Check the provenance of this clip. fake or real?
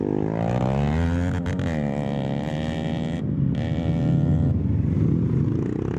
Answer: real